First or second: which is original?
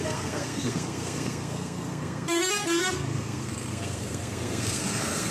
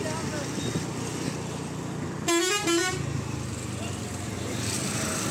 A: second